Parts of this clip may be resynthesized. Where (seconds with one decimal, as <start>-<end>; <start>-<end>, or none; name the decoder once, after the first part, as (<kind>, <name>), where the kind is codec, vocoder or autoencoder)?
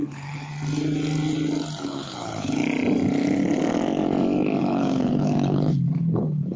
0.0-0.5 (codec, HILCodec); 1.8-2.6; 4.6-6.6